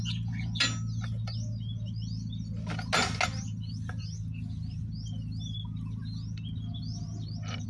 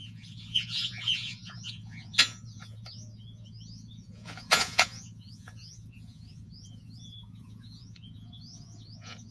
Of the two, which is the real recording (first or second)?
first